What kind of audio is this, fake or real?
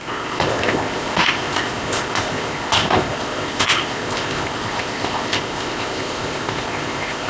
fake